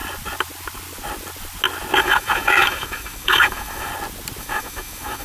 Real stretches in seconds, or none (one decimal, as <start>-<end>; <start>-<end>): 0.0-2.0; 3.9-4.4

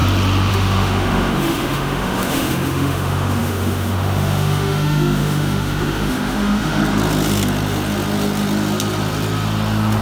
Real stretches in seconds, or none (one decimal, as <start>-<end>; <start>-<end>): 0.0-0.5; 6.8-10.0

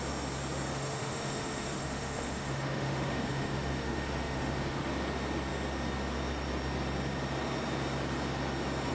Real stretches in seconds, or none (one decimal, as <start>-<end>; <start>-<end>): 0.0-0.7; 4.9-8.9